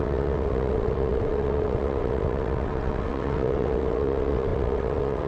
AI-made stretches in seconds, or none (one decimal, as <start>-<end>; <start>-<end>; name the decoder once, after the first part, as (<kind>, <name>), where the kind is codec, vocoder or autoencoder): 0.0-5.3 (vocoder, WaveNeXt)